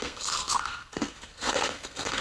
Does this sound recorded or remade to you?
remade